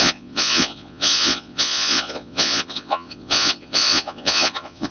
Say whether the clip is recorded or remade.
remade